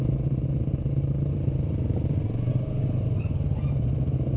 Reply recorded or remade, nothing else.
recorded